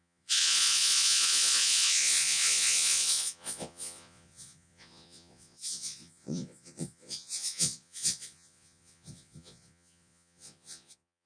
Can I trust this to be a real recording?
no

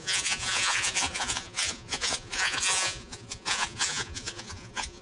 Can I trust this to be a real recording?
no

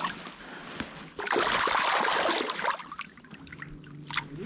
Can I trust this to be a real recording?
yes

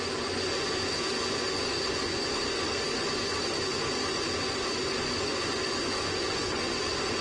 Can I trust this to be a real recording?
no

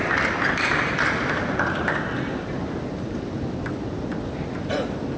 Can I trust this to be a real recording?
yes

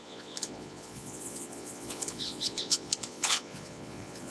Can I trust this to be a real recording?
no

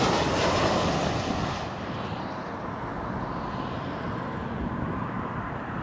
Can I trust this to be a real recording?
yes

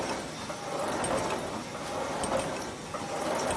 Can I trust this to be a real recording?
yes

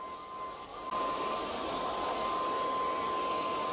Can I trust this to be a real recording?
yes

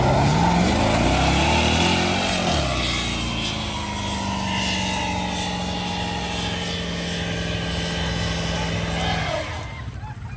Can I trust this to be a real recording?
yes